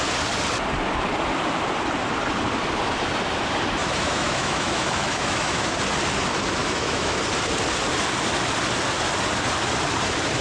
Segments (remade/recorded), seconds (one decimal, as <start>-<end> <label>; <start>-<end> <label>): 0.0-3.8 recorded; 3.8-5.7 remade; 5.7-6.6 recorded; 6.6-7.2 remade; 7.2-10.4 recorded